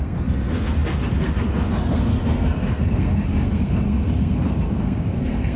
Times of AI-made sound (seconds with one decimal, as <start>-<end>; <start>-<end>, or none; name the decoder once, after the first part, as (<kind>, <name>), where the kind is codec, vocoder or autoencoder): 0.0-5.6 (codec, SNAC)